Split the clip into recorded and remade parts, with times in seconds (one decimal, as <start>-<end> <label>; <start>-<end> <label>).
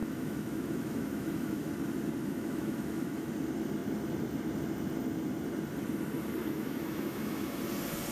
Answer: 0.0-1.7 remade; 1.7-2.2 recorded; 2.2-3.3 remade; 3.3-6.4 recorded; 6.4-7.6 remade; 7.6-8.1 recorded